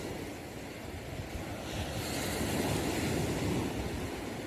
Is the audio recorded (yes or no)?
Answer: yes